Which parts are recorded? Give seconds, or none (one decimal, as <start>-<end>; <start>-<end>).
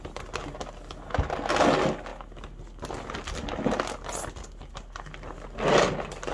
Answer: 0.0-6.3